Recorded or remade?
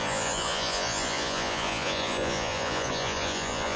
remade